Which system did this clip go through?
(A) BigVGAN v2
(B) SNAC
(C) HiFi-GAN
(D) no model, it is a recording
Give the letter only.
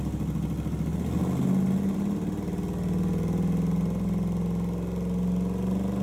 D